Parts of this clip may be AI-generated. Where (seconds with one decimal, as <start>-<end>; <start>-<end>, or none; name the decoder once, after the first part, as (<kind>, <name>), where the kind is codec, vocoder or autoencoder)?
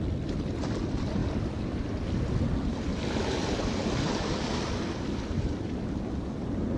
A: 1.2-5.3 (vocoder, BigVGAN v2)